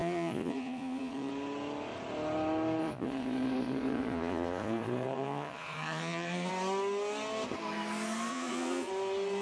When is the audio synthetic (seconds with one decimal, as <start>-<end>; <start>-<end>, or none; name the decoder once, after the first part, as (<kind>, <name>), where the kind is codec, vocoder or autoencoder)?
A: 0.0-1.3 (vocoder, Vocos); 2.8-6.5; 8.3-8.9

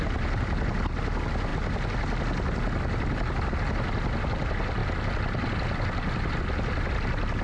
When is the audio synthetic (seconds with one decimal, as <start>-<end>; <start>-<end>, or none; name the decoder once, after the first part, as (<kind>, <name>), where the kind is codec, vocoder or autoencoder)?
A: none

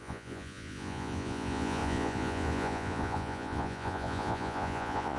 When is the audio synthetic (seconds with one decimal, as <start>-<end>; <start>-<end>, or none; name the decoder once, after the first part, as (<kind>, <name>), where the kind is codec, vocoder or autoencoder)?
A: 0.0-5.2 (vocoder, Vocos)

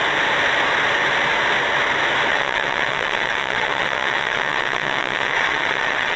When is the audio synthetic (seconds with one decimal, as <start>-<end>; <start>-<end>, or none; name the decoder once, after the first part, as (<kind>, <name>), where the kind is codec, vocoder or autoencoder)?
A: 2.3-6.2 (vocoder, WaveNeXt)